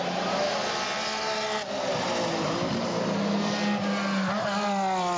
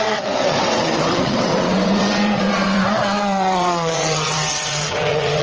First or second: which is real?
first